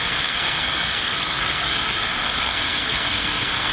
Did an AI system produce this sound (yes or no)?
yes